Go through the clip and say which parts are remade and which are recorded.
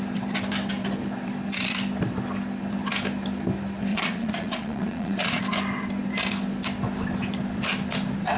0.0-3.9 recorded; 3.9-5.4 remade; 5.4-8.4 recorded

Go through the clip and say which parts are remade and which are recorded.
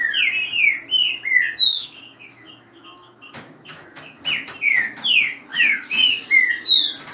0.0-1.7 recorded; 1.7-4.2 remade; 4.2-5.5 recorded; 5.5-6.1 remade; 6.1-7.1 recorded